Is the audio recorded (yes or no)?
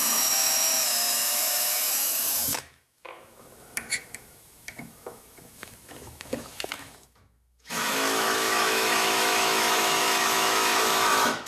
no